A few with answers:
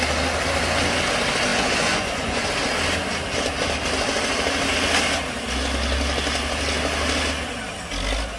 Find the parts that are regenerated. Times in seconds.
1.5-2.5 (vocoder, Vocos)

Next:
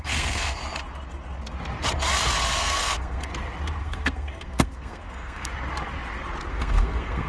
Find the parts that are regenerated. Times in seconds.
0.0-0.6 (codec, SNAC); 2.6-3.3; 3.8-5.5; 6.5-7.3

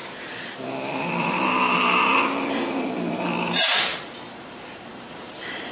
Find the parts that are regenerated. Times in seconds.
3.4-3.9 (vocoder, BigVGAN v2); 4.5-5.7

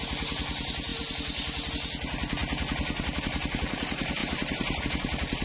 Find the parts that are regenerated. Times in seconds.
4.2-4.8 (vocoder, BigVGAN v2)

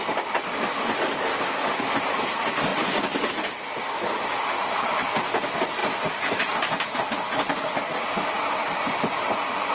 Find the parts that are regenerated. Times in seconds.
none